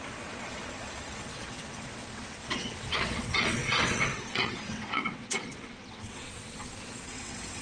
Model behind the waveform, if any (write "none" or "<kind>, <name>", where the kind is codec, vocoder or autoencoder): vocoder, WaveNeXt